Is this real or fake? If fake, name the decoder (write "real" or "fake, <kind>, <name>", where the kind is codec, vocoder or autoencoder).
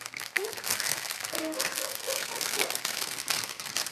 fake, codec, SNAC